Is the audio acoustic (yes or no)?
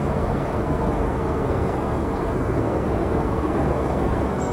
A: no